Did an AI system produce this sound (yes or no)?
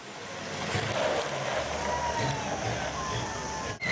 no